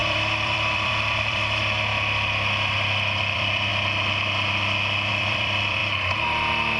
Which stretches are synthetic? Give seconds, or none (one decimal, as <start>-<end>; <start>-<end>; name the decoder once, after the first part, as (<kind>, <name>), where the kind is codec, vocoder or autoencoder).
0.0-1.9 (vocoder, BigVGAN v2); 2.7-3.7; 5.1-5.8